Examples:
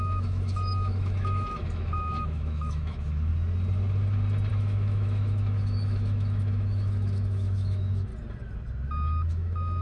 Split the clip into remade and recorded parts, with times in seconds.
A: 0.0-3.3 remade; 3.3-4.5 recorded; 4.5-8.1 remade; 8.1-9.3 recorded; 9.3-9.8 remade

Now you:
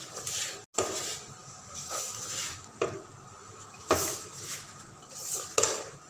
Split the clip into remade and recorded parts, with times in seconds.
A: 0.0-1.4 recorded; 1.4-2.7 remade; 2.7-3.4 recorded; 3.4-5.0 remade; 5.0-6.1 recorded